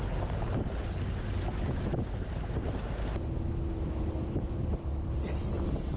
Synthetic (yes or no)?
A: no